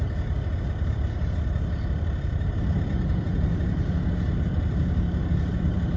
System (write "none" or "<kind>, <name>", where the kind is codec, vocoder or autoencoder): none